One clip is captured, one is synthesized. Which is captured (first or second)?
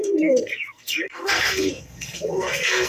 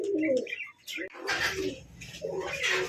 second